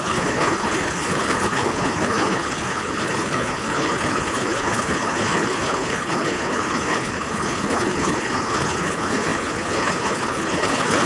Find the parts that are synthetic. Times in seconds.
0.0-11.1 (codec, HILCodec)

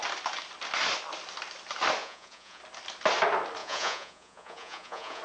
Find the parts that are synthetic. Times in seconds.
2.0-2.6 (vocoder, Vocos); 3.6-5.2

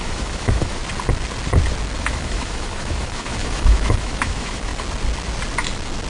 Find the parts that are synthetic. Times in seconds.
0.0-0.8 (autoencoder, DAC-VAE); 2.0-4.7

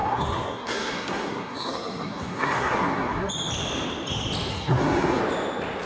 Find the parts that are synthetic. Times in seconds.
0.0-3.3 (codec, SNAC); 4.5-5.2

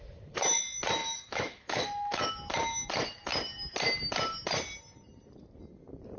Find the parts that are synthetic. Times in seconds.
1.0-2.3 (autoencoder, DAC-VAE)

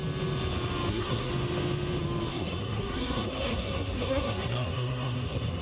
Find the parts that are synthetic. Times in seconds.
0.9-1.3 (codec, SNAC); 2.3-5.6